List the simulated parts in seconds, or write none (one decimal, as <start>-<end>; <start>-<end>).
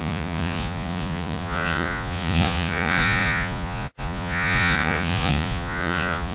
0.0-6.3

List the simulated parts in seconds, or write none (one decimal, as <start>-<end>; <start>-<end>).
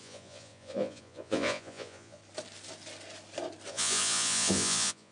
0.0-2.2; 3.7-5.1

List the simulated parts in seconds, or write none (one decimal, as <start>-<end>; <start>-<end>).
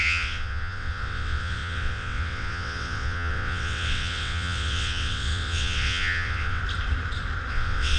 0.0-6.6; 7.5-8.0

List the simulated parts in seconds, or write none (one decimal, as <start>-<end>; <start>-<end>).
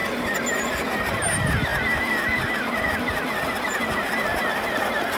0.0-0.7; 1.7-4.8